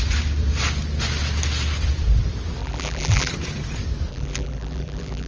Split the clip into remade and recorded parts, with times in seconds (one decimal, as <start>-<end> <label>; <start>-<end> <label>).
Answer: 0.0-2.6 recorded; 2.6-3.3 remade; 3.3-4.1 recorded; 4.1-5.3 remade